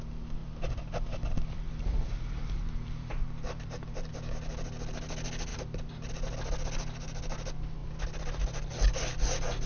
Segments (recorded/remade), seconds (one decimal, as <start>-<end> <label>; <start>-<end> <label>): 0.0-0.4 recorded; 0.4-4.1 remade; 4.1-5.5 recorded; 5.5-6.1 remade; 6.1-9.7 recorded